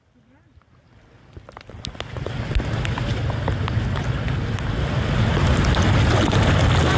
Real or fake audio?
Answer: real